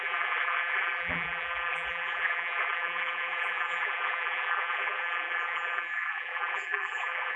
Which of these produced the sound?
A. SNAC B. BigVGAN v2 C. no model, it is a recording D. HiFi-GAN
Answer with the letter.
B